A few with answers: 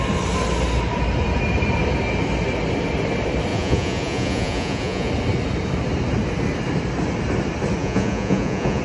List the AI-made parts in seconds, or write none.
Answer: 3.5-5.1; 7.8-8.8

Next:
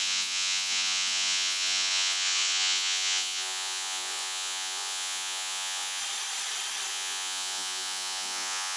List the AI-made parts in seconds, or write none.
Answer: 0.0-6.0; 6.9-8.8

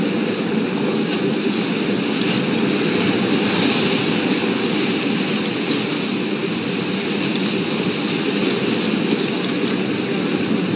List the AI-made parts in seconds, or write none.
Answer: none

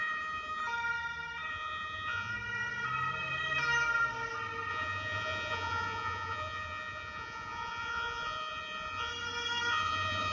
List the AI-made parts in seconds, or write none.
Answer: 0.0-0.6; 1.5-2.3; 4.7-9.1; 9.7-10.3

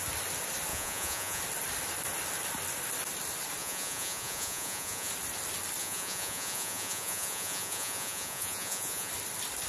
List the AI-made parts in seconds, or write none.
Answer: 0.7-1.4; 3.6-5.1; 5.8-9.1

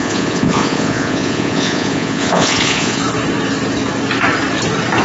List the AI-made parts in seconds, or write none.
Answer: 0.0-3.0

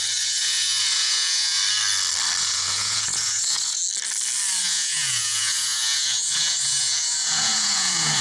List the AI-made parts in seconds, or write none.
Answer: 0.0-1.6; 2.4-3.8; 4.6-8.2

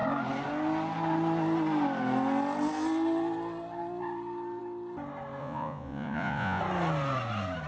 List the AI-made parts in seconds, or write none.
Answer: 5.4-6.6